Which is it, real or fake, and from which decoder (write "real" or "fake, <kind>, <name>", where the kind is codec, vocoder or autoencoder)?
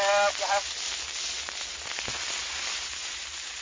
real